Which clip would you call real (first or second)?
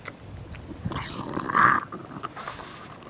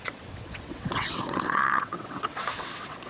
first